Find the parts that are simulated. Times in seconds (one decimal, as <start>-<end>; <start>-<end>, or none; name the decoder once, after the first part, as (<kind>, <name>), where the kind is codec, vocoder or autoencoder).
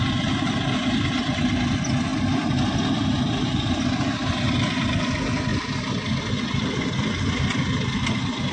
none